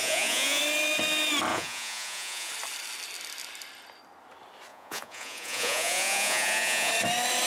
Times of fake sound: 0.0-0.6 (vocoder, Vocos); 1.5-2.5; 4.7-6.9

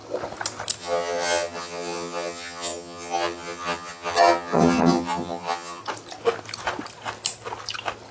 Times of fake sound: 0.8-5.8 (vocoder, HiFi-GAN)